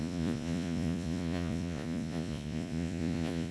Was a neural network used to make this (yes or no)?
yes